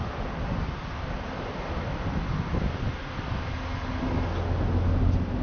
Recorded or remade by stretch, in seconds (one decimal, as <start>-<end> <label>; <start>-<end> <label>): 0.0-5.4 recorded